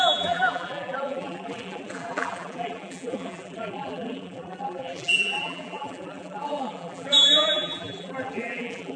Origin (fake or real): fake